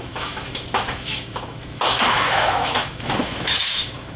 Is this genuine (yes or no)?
no